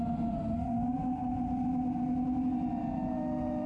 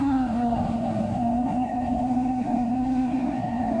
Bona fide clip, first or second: first